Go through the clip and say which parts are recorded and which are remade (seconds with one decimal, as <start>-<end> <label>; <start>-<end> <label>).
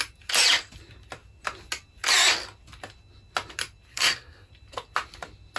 0.0-3.9 recorded; 3.9-4.5 remade; 4.5-5.6 recorded